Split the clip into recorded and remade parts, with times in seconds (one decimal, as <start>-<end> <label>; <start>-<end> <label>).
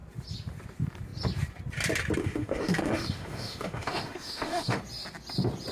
0.0-2.2 recorded; 2.2-4.8 remade; 4.8-5.7 recorded